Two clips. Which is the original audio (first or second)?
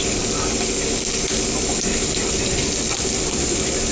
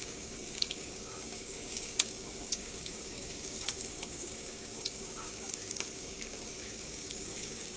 first